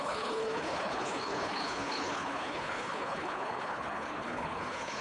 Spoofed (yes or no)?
yes